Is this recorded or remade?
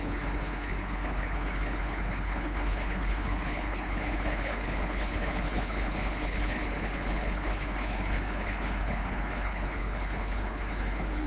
remade